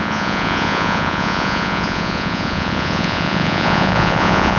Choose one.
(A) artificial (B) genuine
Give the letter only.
A